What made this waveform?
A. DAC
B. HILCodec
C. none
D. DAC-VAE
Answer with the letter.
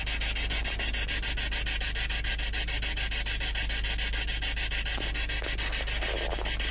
C